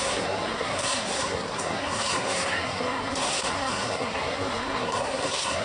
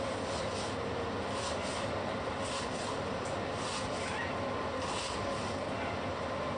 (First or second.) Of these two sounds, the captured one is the second